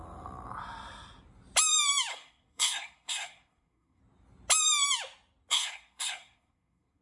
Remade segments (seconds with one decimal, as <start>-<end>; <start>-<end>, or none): 2.1-4.0; 5.5-7.0